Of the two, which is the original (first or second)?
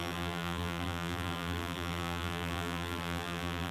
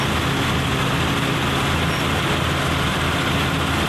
second